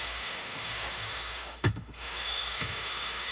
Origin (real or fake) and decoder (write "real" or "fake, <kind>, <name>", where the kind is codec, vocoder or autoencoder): fake, autoencoder, DAC-VAE